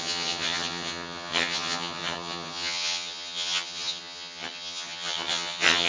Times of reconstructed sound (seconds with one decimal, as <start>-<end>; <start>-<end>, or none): 0.0-5.9